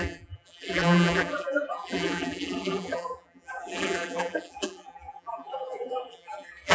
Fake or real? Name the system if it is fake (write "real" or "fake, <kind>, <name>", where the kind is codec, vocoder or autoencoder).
fake, vocoder, BigVGAN v2